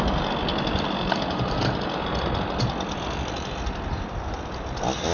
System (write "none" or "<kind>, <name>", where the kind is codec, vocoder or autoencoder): none